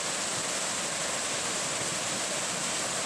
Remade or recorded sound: recorded